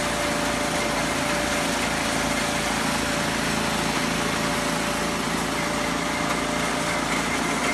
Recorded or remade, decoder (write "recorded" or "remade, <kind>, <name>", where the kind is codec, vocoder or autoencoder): recorded